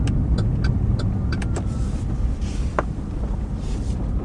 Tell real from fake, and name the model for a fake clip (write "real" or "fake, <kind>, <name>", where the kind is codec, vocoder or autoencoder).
real